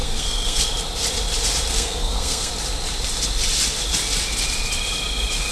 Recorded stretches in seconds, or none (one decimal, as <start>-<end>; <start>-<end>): 0.6-1.7; 2.5-5.5